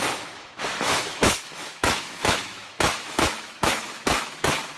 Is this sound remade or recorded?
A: remade